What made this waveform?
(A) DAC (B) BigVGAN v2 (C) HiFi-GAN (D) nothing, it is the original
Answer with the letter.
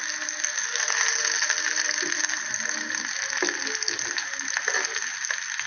D